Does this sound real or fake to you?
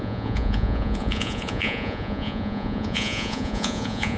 fake